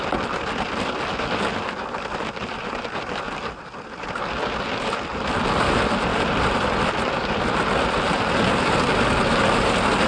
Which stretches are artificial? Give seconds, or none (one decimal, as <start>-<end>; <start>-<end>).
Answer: 6.1-7.1